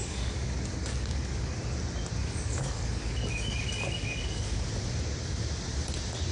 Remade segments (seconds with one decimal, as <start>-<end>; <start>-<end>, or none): 0.0-1.5; 2.2-4.7